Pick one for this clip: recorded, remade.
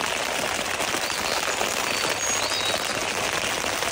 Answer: recorded